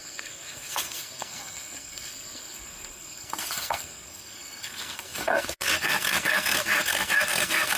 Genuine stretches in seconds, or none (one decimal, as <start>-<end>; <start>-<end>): none